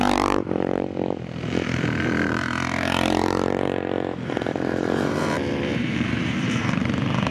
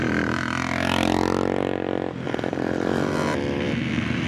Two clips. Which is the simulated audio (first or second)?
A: first